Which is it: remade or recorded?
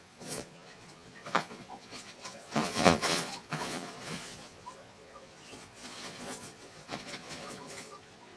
remade